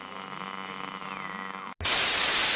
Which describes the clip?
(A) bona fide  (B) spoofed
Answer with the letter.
A